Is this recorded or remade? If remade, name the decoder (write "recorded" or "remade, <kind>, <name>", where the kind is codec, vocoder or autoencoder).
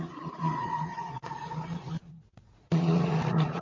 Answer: remade, vocoder, Vocos